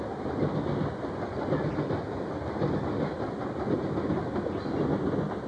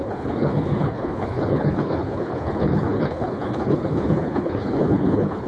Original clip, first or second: first